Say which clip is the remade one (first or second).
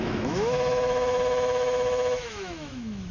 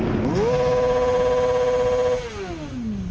first